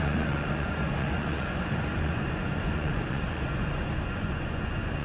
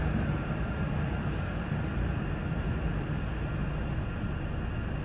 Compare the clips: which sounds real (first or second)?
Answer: second